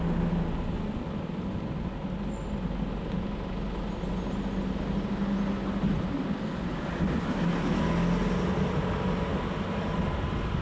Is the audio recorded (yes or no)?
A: yes